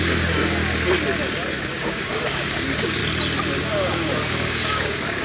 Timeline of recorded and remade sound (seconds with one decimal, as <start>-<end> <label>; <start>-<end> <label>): 0.0-0.6 remade; 0.6-1.6 recorded; 1.6-3.0 remade; 3.0-3.6 recorded; 3.6-5.2 remade